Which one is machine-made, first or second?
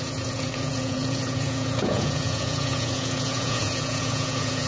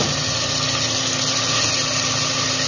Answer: first